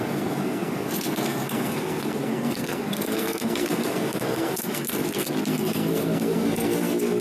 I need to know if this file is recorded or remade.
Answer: remade